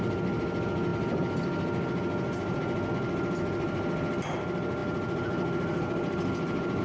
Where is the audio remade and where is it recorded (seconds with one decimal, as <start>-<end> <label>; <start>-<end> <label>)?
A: 0.0-6.8 recorded